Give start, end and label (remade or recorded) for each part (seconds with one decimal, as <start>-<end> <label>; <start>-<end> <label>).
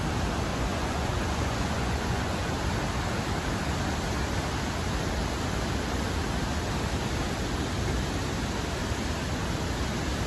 0.0-0.5 recorded; 0.5-2.5 remade; 2.5-10.3 recorded